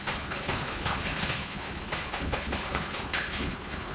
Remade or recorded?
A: remade